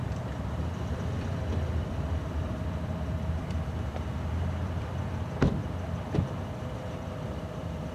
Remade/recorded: remade